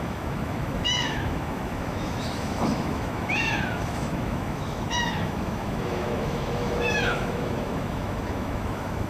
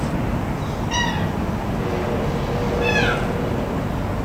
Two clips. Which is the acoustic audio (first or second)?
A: second